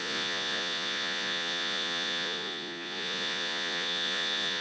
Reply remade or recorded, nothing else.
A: remade